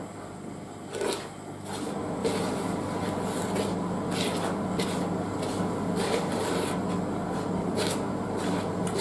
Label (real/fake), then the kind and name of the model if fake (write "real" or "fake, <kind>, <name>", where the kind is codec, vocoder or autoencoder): real